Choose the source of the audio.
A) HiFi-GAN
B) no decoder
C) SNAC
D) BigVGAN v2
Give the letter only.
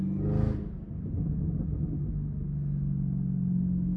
B